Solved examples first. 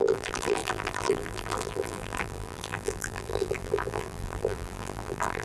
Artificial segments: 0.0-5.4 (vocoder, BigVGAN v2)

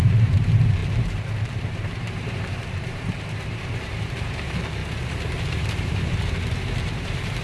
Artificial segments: 0.0-4.8 (vocoder, BigVGAN v2); 5.4-7.4